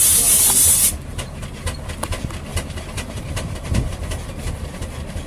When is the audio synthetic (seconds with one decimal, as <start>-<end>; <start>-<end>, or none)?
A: 2.5-5.3